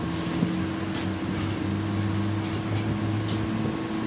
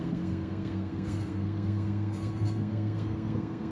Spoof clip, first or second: second